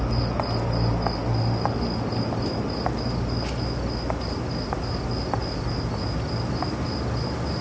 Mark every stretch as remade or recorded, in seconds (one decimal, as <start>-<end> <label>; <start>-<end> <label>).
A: 0.0-7.6 recorded